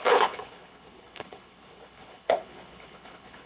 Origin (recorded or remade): remade